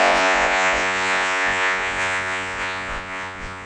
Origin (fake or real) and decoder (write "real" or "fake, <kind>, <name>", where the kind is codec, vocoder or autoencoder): fake, vocoder, Vocos